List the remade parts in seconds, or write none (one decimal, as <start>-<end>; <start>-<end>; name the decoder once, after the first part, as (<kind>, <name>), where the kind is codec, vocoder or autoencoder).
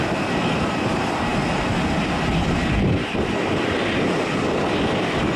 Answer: none